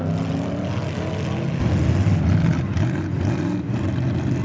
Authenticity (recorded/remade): recorded